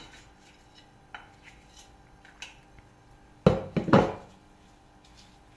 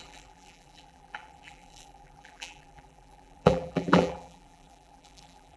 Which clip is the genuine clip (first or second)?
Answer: first